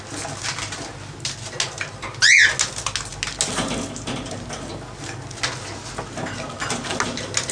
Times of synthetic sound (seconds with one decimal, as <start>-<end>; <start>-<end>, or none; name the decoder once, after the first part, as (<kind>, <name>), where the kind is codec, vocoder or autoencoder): none

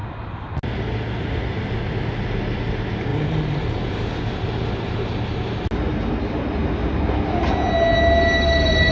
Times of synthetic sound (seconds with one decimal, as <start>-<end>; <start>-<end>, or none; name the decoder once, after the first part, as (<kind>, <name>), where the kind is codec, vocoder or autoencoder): 3.1-4.2 (vocoder, BigVGAN v2); 5.9-6.6

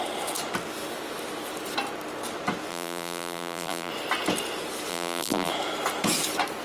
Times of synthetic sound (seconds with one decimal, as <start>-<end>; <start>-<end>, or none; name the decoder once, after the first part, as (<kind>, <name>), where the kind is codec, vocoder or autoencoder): 2.7-3.9 (vocoder, BigVGAN v2); 4.9-5.5